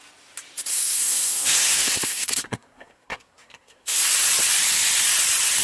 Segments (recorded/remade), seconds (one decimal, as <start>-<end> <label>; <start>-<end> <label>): 0.0-0.7 recorded; 0.7-4.1 remade; 4.1-5.6 recorded